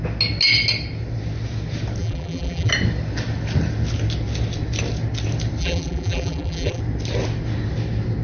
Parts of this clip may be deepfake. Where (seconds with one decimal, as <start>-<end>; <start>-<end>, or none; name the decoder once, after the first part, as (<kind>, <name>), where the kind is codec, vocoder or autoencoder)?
2.0-2.7 (vocoder, BigVGAN v2); 5.6-6.8